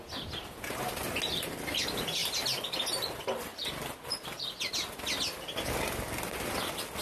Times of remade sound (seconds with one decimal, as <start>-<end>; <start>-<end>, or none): 2.2-2.9